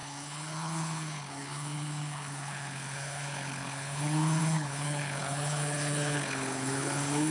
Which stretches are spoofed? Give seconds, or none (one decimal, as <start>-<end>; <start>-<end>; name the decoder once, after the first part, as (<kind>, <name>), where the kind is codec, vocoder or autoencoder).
0.0-7.3 (codec, HILCodec)